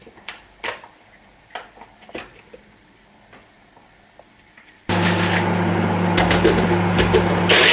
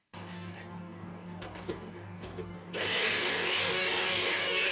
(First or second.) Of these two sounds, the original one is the first